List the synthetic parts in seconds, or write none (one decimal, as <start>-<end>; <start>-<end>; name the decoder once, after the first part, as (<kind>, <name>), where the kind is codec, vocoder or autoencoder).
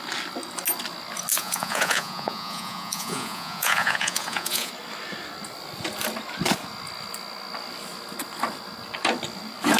1.3-4.7 (vocoder, Vocos)